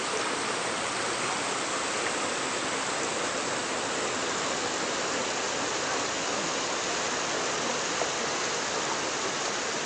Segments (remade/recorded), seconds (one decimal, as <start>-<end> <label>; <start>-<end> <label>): 0.0-9.9 recorded